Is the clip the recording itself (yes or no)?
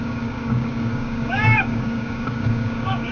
no